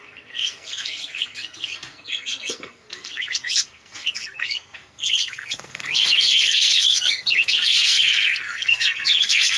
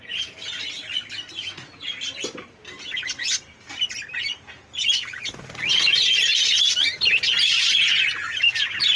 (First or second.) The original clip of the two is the second